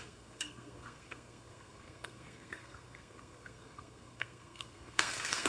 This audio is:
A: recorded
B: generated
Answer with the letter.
B